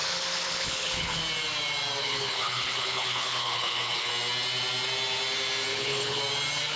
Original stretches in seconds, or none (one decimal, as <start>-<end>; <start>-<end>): 1.2-2.0; 4.1-5.7; 6.2-6.8